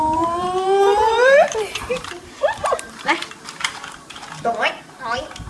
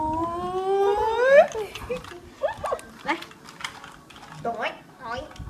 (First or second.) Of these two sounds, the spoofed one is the first